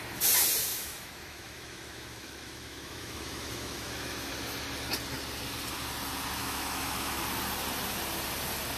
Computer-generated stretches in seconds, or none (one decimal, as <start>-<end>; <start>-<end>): 0.7-4.3; 6.4-7.2